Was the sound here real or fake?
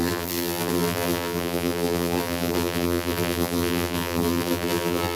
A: fake